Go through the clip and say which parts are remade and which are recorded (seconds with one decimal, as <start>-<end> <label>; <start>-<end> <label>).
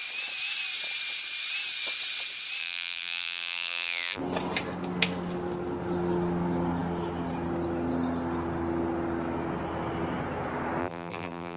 0.0-2.6 recorded; 2.6-4.2 remade; 4.2-10.8 recorded; 10.8-11.6 remade